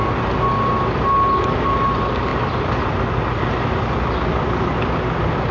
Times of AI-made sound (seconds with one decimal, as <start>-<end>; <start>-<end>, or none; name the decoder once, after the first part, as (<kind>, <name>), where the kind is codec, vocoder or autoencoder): none